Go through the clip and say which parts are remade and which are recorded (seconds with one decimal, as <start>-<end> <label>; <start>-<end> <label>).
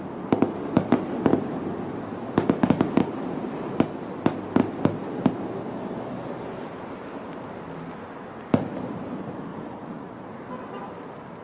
0.0-9.5 recorded; 9.5-10.2 remade; 10.2-11.4 recorded